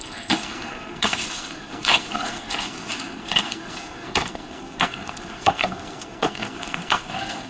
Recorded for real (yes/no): no